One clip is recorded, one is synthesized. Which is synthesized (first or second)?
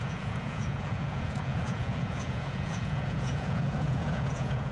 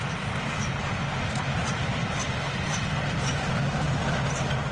first